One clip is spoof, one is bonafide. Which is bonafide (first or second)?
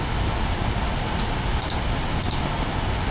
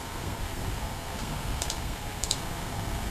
first